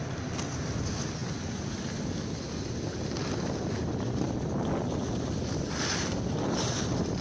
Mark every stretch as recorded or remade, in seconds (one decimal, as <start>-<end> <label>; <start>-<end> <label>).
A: 0.0-7.2 recorded